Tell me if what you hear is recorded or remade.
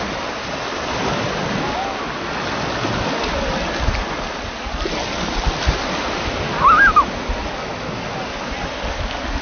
recorded